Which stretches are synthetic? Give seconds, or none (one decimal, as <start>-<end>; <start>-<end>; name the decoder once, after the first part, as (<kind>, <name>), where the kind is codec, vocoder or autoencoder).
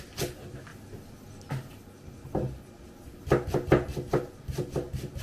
none